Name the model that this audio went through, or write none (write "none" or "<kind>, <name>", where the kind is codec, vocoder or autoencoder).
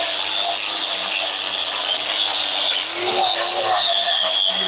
none